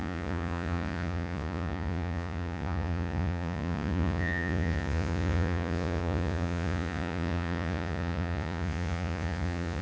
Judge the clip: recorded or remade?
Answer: remade